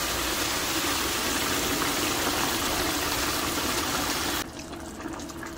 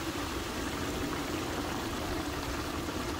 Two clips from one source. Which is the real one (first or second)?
first